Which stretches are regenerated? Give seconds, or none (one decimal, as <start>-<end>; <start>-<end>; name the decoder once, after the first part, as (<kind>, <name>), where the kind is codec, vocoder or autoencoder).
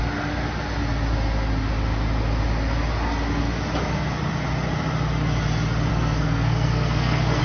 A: 5.9-7.4 (codec, SNAC)